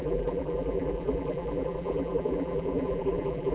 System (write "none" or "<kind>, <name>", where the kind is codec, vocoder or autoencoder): vocoder, BigVGAN v2